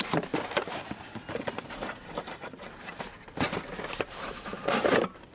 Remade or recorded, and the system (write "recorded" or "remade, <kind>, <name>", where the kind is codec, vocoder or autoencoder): remade, vocoder, BigVGAN v2